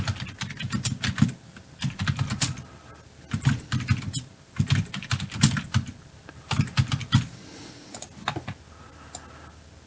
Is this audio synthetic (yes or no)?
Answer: no